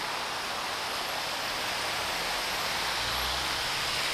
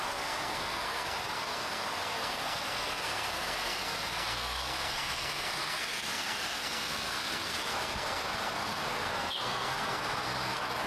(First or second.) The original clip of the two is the first